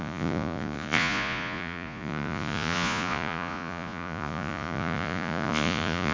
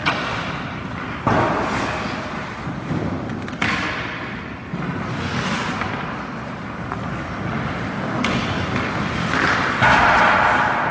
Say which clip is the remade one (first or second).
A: first